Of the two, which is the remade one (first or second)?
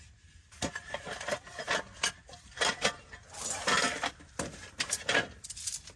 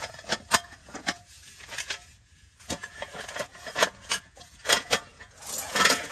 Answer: second